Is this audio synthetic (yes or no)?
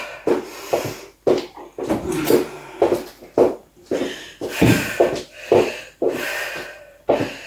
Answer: no